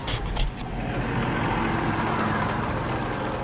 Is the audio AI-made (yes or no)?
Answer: no